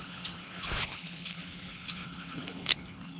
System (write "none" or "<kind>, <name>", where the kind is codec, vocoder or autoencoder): codec, HILCodec